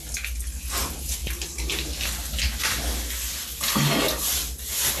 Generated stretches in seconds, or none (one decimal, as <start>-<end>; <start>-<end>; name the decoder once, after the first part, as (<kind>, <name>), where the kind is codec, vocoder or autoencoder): none